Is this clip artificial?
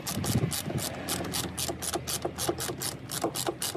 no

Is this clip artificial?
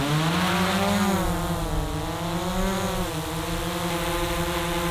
no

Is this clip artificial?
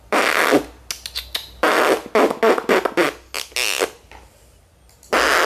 no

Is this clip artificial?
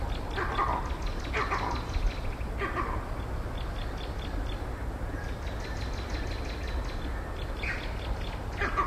no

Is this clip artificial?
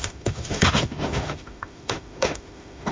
yes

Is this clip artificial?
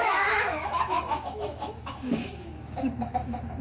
yes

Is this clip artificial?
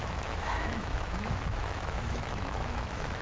yes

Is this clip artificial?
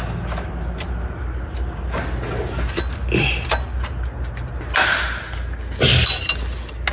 no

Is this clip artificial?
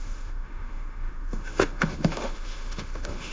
yes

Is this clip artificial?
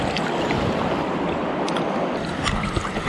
no